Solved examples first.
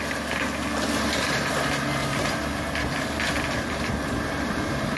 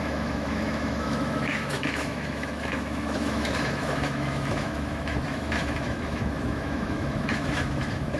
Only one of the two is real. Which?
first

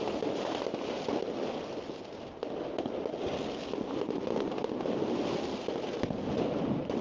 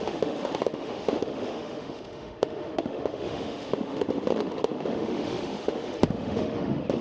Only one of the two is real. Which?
first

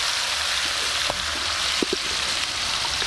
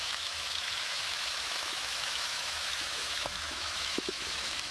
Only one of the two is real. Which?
first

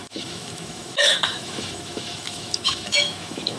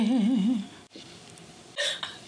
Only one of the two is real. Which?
second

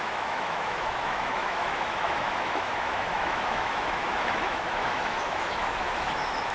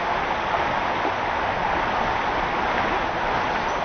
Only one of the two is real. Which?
second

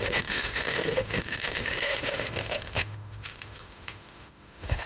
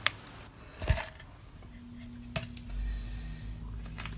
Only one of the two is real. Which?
second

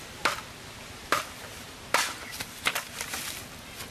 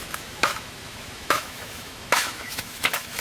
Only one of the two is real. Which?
first